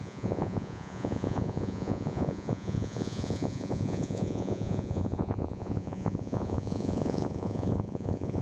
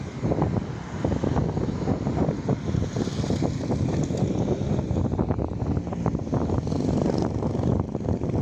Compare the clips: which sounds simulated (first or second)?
first